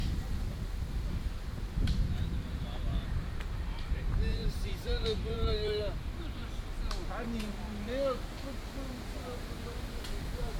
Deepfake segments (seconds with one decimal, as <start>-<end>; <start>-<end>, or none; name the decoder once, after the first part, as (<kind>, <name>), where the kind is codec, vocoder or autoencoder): 0.9-6.4 (vocoder, BigVGAN v2); 9.2-10.6